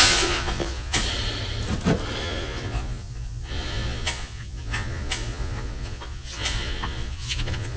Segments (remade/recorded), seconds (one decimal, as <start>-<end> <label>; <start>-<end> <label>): 0.0-1.0 remade; 1.0-2.2 recorded; 2.2-7.8 remade